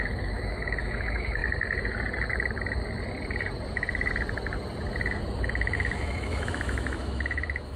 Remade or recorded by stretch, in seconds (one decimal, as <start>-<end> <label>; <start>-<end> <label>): 0.0-1.4 remade; 1.4-5.4 recorded; 5.4-7.8 remade